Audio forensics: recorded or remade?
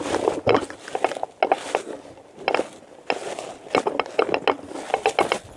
recorded